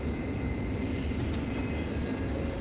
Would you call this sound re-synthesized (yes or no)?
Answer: no